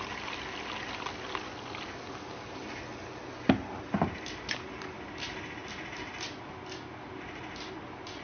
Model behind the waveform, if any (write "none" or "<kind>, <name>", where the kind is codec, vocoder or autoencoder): none